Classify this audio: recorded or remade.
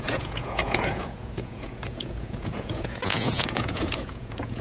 remade